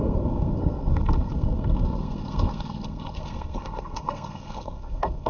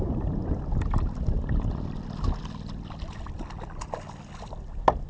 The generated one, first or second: first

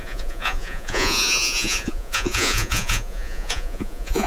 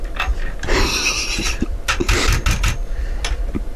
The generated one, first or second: first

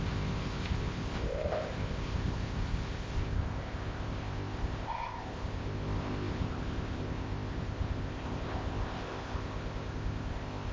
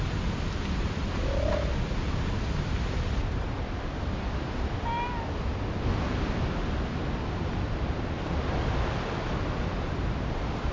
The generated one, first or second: first